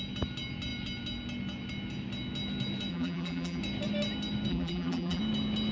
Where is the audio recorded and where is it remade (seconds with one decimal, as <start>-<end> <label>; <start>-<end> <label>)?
0.0-2.9 recorded; 2.9-3.6 remade; 3.6-4.5 recorded; 4.5-5.2 remade; 5.2-5.7 recorded